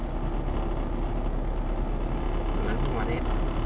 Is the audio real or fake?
real